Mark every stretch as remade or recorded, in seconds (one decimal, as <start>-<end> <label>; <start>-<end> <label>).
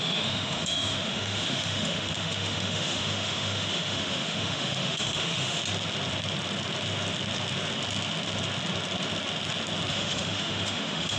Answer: 0.0-5.6 remade; 5.6-9.9 recorded; 9.9-11.2 remade